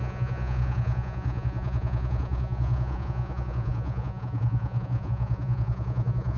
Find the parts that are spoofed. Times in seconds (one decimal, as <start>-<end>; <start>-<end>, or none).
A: 0.0-6.4